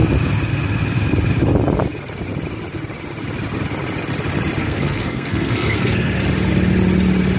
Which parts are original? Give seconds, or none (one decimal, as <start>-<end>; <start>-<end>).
0.0-4.6; 6.2-7.4